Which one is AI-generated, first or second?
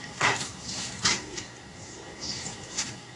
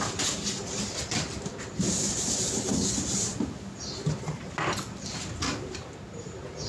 first